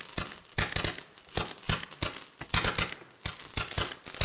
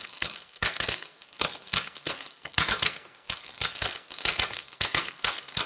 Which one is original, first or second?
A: first